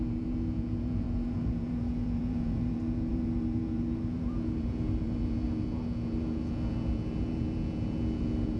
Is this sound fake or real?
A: fake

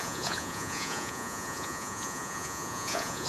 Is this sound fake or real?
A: fake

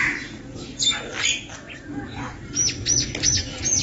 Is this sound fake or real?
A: real